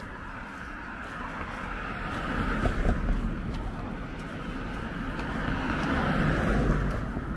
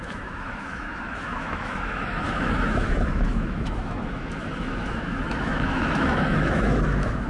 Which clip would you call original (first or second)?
first